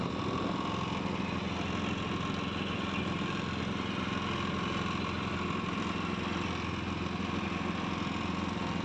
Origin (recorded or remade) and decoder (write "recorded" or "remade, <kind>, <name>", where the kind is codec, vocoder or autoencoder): recorded